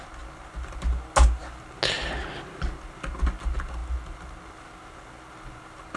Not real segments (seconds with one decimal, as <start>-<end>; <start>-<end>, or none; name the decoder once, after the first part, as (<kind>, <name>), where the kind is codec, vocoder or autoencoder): none